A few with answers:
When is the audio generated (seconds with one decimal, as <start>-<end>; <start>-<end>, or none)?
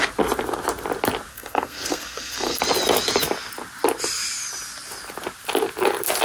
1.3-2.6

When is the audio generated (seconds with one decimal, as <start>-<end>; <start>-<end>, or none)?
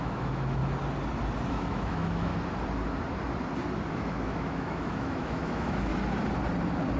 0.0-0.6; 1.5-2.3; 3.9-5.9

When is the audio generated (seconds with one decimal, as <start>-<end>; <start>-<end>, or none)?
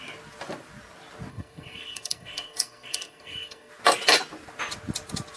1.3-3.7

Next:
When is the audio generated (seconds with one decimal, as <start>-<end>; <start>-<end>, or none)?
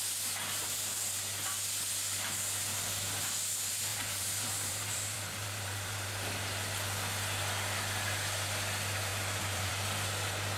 3.9-6.1; 9.1-9.7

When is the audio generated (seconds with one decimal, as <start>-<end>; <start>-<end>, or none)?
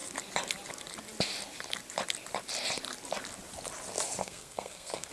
4.2-5.1